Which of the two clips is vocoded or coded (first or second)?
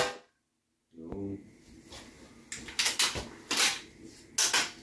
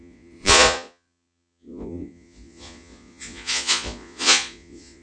second